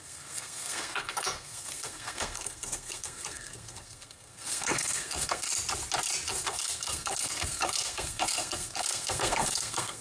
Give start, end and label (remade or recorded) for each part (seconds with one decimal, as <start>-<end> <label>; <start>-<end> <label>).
0.0-5.5 remade; 5.5-6.3 recorded; 6.3-10.0 remade